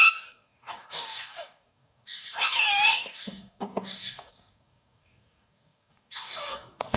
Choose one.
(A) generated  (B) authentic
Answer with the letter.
A